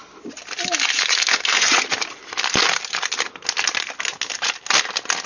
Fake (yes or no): no